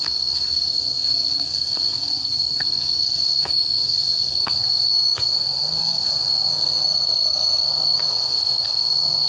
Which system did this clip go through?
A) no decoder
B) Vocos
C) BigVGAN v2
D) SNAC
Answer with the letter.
D